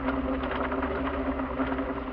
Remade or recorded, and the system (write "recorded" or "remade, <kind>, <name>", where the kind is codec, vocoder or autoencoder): recorded